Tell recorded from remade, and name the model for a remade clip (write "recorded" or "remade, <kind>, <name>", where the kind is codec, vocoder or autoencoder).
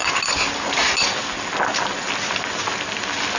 recorded